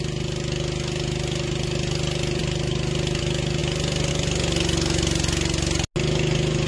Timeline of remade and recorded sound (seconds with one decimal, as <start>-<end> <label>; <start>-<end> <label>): 0.0-6.7 recorded